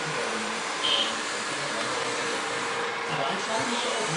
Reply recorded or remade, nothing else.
remade